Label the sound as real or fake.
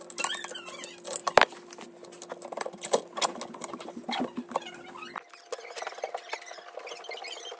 real